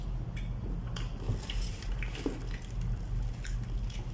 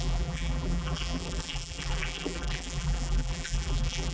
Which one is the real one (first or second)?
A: first